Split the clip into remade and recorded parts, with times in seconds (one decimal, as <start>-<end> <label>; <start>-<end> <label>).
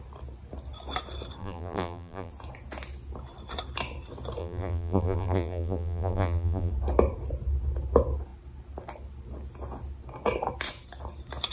0.0-1.4 recorded; 1.4-2.3 remade; 2.3-4.4 recorded; 4.4-6.7 remade; 6.7-11.5 recorded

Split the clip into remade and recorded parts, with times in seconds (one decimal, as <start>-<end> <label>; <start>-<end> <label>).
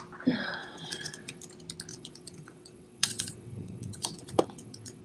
0.0-0.6 recorded; 0.6-1.4 remade; 1.4-1.9 recorded; 1.9-5.0 remade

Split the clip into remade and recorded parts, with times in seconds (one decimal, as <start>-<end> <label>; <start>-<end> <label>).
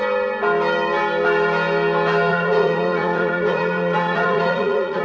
0.0-2.3 recorded; 2.3-5.0 remade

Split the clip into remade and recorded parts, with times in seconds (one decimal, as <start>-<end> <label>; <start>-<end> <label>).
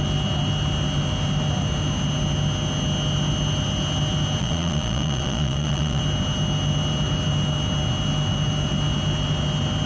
0.0-4.4 recorded; 4.4-6.0 remade; 6.0-9.9 recorded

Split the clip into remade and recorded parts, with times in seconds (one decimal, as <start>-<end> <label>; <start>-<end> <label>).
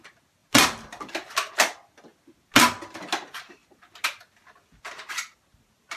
0.0-6.0 recorded